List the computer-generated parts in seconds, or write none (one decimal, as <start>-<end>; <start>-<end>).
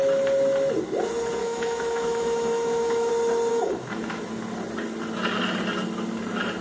1.4-3.1; 3.5-4.3